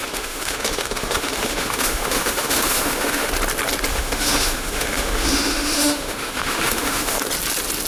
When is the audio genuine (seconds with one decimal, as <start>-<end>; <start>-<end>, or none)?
3.3-3.9; 7.2-7.9